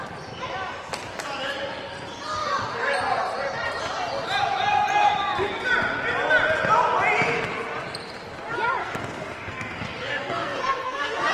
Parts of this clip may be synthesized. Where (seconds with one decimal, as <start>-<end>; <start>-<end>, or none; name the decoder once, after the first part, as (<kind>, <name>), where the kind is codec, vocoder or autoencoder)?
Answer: 8.8-11.3 (codec, SNAC)

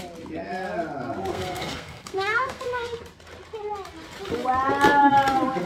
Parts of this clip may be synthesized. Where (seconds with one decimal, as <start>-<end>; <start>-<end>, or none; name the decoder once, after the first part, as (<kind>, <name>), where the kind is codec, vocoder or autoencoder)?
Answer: 1.3-3.0 (codec, SNAC)